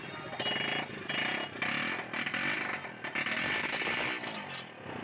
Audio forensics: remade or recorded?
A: recorded